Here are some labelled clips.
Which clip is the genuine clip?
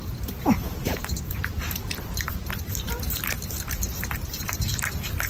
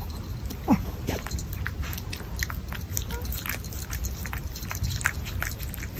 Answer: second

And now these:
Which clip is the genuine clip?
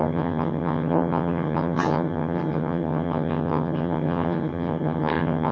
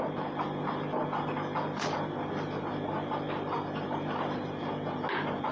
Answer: second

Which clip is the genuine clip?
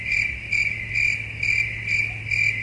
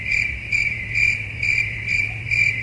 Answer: first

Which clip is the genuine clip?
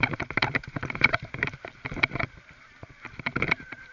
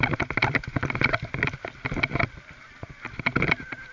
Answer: second